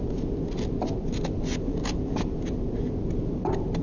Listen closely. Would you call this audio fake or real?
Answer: real